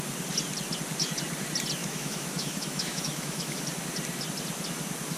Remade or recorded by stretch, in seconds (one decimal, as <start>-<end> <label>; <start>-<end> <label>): 0.0-1.8 recorded; 1.8-3.6 remade; 3.6-5.2 recorded